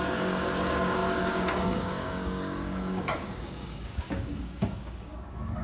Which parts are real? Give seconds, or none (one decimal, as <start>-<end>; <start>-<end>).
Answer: none